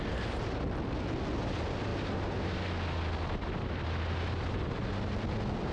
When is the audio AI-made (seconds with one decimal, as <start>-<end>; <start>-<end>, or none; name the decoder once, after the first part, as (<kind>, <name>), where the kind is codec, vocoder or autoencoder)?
none

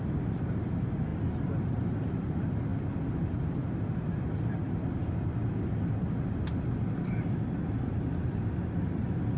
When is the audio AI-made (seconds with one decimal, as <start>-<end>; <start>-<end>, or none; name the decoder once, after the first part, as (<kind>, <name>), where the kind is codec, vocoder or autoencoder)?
none